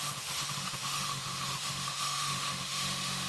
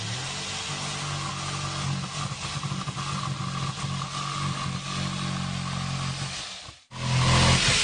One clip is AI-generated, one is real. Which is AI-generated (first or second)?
first